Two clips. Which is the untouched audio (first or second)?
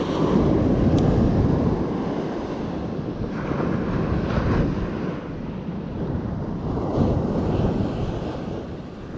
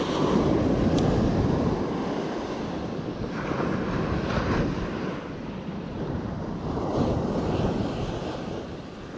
first